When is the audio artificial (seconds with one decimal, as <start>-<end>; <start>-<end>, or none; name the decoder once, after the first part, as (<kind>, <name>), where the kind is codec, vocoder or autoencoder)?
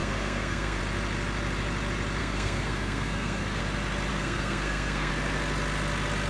0.0-0.8 (codec, SNAC); 2.2-3.6; 4.1-5.1